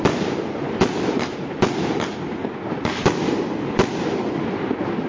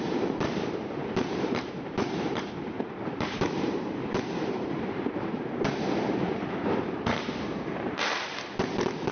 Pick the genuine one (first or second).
first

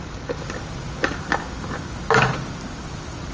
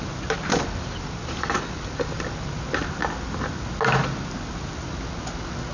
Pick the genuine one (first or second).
second